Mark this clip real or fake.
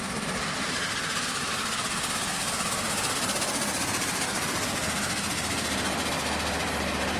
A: real